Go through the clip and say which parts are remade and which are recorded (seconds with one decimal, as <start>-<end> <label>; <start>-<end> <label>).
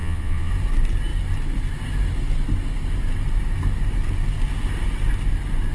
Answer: 0.0-0.5 remade; 0.5-5.7 recorded